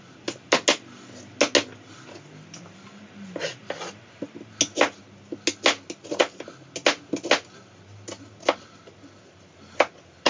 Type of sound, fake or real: real